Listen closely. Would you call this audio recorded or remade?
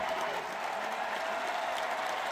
recorded